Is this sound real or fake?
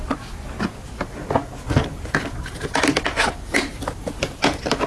real